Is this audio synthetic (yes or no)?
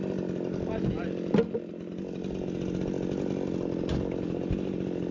no